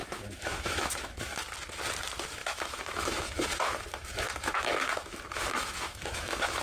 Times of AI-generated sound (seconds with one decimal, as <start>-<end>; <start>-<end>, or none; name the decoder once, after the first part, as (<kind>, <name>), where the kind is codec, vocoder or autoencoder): 0.0-1.3 (autoencoder, DAC-VAE); 2.4-6.6